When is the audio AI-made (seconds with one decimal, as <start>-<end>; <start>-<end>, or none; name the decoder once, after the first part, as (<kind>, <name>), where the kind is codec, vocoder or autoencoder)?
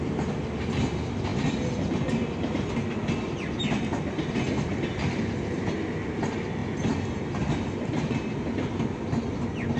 none